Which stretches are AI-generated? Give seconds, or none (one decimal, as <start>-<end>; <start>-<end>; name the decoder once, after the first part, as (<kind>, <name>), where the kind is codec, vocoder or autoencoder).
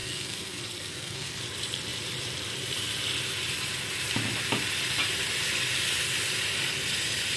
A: 0.0-1.4 (codec, SNAC)